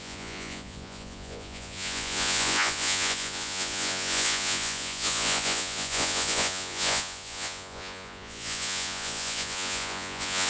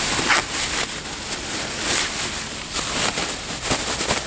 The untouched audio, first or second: second